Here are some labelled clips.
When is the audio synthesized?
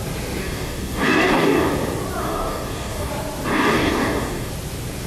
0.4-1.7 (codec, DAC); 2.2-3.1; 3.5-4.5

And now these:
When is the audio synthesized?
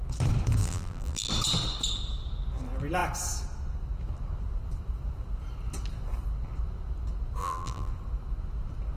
0.6-1.3 (vocoder, BigVGAN v2); 7.4-7.9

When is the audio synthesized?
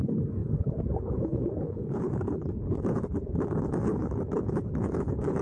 0.0-5.4 (codec, HILCodec)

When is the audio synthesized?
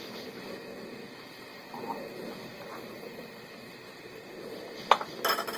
1.5-2.0 (vocoder, BigVGAN v2); 2.5-3.5